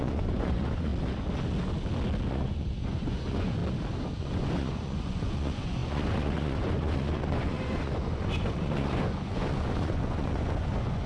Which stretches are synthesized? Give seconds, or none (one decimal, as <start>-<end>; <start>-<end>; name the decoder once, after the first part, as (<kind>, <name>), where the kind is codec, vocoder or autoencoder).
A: 0.0-0.9 (vocoder, Vocos); 2.3-3.6; 4.2-11.1